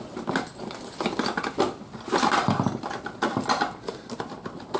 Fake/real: real